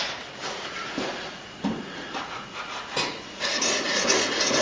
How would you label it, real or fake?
fake